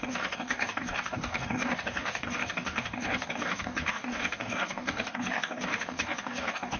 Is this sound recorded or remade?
remade